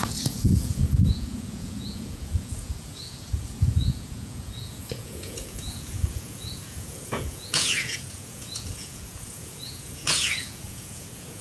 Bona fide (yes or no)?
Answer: no